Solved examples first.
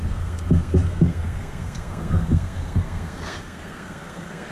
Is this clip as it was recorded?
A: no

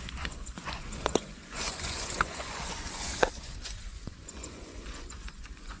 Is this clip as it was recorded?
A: no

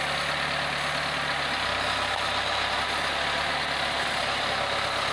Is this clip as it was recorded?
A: yes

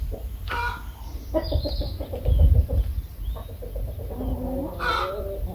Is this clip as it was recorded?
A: yes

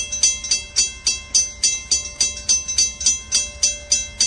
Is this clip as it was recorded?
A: yes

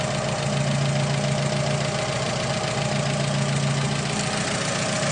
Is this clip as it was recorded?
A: yes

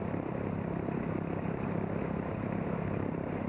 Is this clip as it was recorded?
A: yes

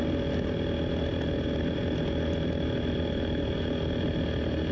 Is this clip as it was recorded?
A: yes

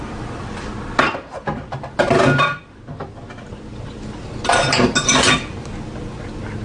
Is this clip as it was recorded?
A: yes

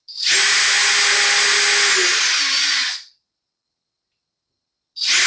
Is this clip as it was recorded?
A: yes